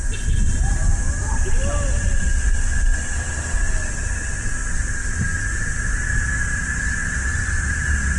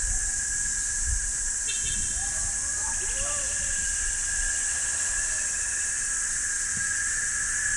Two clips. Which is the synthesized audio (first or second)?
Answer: second